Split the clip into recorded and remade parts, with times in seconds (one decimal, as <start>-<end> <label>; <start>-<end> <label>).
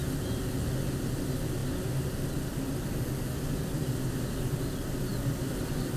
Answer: 0.0-6.0 recorded